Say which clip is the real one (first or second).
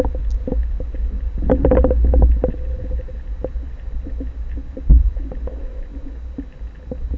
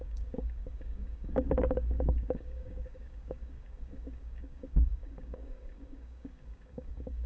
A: first